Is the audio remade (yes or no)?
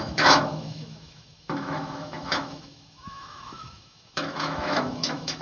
yes